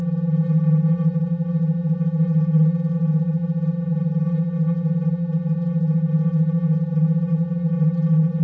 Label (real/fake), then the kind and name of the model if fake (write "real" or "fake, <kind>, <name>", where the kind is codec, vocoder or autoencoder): fake, vocoder, HiFi-GAN